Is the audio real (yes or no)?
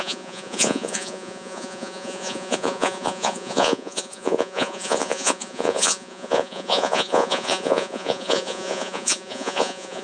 no